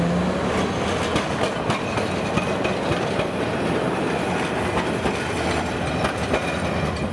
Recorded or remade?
recorded